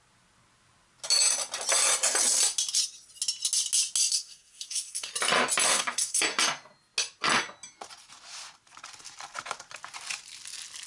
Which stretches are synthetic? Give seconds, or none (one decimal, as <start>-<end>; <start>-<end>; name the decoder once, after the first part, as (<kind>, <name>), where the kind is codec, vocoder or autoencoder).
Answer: 4.1-5.1 (codec, SNAC); 5.7-6.2